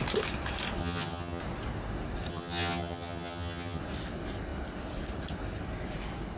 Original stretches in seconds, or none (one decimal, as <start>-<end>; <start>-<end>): 0.0-0.8; 1.4-2.3; 3.8-6.4